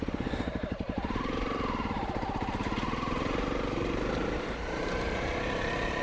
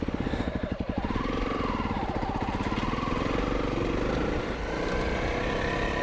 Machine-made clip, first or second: first